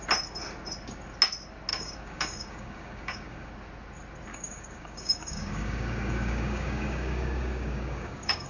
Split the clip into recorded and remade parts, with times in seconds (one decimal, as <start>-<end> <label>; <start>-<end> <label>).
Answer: 0.0-1.7 recorded; 1.7-3.5 remade; 3.5-4.3 recorded; 4.3-8.5 remade